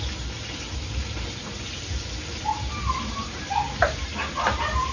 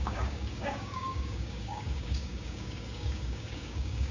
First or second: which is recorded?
first